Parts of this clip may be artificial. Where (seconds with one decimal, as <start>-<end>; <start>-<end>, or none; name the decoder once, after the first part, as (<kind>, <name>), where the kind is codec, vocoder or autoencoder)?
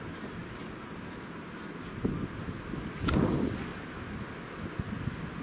none